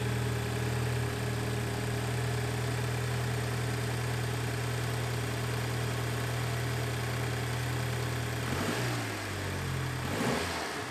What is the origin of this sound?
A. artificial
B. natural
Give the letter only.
B